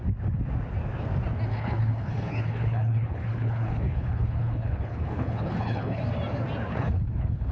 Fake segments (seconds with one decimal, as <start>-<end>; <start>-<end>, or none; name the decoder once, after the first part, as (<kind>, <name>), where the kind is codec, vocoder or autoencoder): 1.5-6.0 (codec, HILCodec); 6.7-7.5